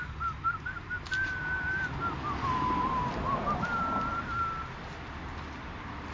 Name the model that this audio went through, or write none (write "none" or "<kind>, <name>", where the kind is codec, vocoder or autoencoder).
none